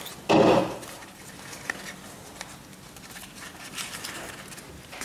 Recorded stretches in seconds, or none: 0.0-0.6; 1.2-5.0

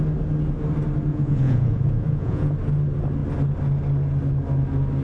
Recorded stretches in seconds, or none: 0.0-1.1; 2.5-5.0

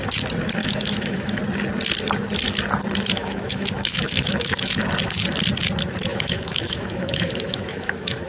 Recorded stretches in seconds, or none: 0.0-0.6; 1.4-3.2; 4.7-6.1

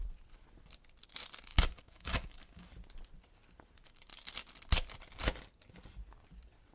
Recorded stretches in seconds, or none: 0.0-1.5; 2.7-6.7

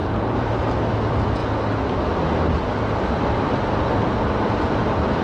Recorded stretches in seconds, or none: 0.9-5.2